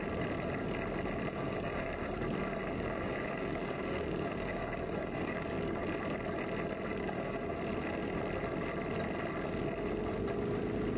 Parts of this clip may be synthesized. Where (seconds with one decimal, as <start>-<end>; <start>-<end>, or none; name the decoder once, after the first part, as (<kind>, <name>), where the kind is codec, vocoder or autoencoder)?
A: 1.3-2.2 (codec, DAC); 2.6-5.8; 6.9-7.6